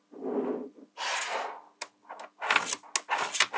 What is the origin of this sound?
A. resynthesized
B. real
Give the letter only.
B